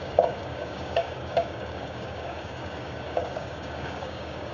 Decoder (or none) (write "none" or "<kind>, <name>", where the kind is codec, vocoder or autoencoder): codec, DAC